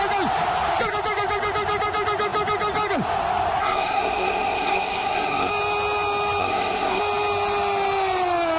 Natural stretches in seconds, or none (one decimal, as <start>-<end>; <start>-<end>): 0.0-3.6; 5.5-6.4; 7.0-8.6